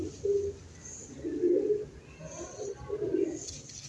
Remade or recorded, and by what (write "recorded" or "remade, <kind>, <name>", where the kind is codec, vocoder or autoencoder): recorded